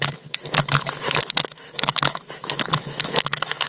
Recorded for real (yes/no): no